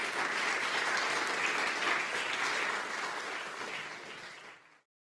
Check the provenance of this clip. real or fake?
real